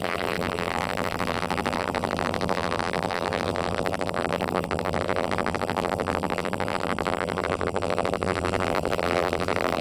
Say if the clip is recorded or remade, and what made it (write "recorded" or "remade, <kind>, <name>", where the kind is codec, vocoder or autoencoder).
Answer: remade, vocoder, BigVGAN v2